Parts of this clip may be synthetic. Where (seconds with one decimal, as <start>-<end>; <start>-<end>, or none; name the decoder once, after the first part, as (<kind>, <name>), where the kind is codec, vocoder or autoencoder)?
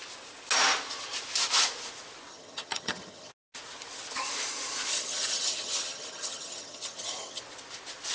2.3-3.3 (vocoder, HiFi-GAN); 4.9-7.4